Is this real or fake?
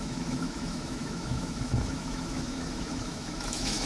fake